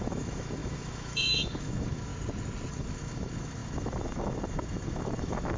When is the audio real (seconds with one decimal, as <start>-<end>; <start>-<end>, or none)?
2.1-2.7